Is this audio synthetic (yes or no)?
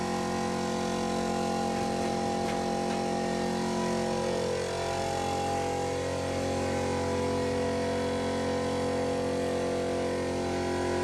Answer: no